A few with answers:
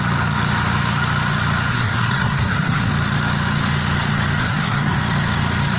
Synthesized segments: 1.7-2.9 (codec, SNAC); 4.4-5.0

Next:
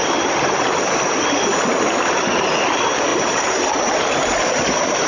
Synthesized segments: none